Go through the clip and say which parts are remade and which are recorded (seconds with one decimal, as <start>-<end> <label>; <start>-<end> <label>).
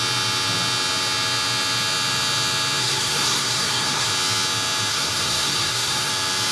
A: 0.0-2.8 recorded; 2.8-4.1 remade; 4.1-4.9 recorded; 4.9-6.1 remade; 6.1-6.5 recorded